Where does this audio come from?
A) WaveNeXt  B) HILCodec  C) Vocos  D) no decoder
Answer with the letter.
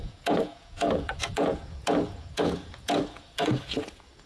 C